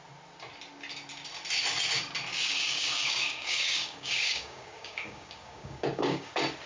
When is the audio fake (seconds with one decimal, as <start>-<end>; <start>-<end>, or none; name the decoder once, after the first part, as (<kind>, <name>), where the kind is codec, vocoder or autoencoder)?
2.3-6.3 (codec, DAC)